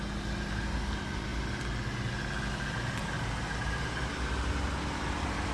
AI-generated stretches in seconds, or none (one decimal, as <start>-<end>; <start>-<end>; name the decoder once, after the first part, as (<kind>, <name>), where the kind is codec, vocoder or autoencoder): none